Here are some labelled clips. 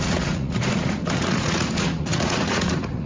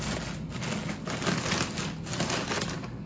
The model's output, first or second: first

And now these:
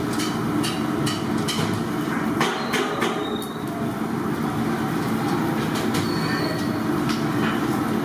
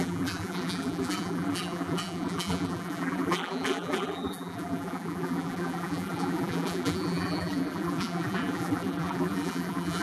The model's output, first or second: second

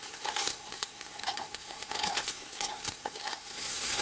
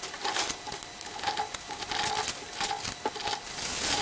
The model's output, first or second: first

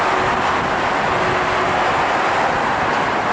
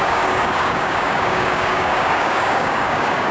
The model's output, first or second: second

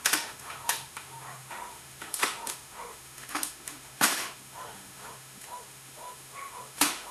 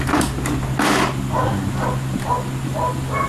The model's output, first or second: first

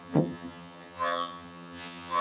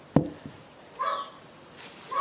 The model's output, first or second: first